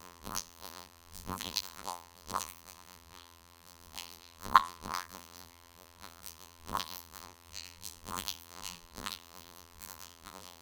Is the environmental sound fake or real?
fake